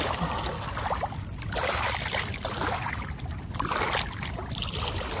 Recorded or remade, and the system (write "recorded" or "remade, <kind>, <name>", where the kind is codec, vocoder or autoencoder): recorded